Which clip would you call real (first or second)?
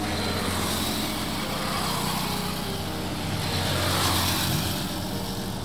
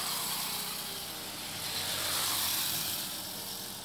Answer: first